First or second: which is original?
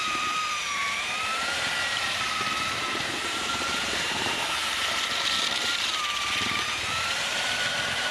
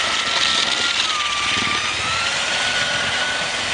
second